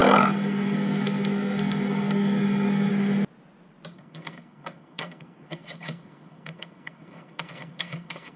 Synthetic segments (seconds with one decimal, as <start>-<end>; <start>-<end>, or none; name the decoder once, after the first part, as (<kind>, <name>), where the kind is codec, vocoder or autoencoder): 0.0-2.9 (codec, SNAC); 3.9-8.4